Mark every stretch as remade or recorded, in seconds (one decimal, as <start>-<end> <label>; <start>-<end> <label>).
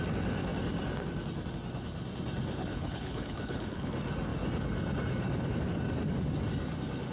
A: 0.0-2.6 recorded; 2.6-3.9 remade; 3.9-7.1 recorded